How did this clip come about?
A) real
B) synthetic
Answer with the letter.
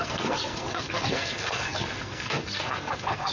B